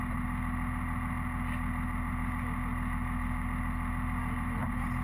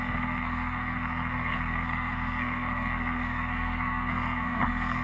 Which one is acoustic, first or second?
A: first